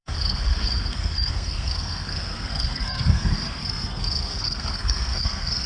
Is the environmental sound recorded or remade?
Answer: remade